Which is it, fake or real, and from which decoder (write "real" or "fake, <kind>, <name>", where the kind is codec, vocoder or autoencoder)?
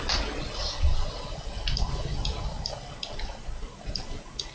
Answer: real